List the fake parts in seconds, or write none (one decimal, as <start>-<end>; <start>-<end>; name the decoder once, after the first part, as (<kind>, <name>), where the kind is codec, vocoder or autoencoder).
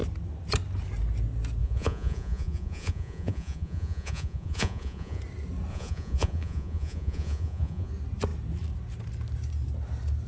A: 1.6-5.2 (vocoder, Vocos); 5.7-7.9